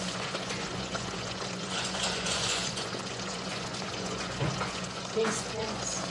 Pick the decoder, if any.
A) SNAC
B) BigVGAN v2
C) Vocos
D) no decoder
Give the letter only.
C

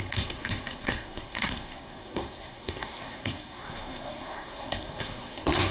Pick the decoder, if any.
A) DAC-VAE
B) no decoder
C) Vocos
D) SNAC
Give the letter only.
D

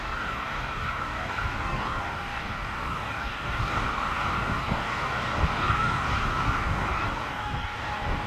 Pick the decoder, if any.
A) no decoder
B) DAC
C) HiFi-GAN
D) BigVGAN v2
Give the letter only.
B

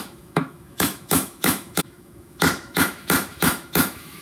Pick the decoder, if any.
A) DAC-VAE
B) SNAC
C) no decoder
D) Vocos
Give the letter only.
A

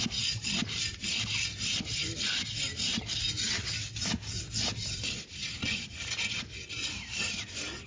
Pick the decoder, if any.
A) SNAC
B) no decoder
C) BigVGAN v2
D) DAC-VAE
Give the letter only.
B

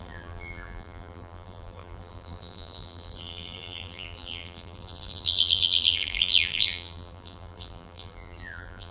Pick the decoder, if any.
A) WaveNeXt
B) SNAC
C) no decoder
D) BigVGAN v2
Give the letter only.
D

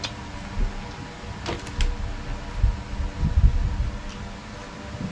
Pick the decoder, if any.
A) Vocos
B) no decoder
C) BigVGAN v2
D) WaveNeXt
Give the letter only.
B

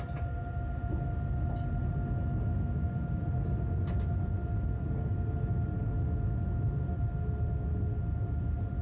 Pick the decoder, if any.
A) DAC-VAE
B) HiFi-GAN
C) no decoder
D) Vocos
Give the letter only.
C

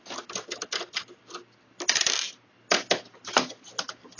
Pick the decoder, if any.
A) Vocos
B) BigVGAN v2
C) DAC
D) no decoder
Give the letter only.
D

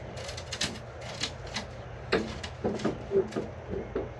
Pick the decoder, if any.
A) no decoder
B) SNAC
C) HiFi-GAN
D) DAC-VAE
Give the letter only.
A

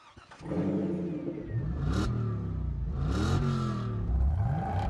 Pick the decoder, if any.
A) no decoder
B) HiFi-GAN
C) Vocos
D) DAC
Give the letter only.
A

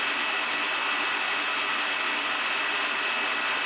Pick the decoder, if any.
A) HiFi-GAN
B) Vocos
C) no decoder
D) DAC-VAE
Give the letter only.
C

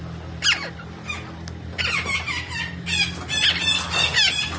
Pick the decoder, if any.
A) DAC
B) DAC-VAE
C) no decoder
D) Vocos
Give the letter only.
C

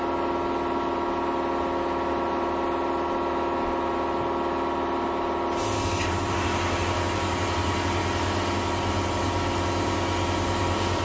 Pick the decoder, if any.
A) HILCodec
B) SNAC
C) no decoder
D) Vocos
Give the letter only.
C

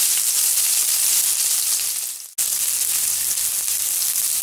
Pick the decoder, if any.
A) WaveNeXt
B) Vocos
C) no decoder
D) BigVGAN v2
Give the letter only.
C